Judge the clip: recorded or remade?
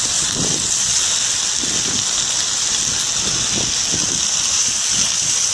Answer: recorded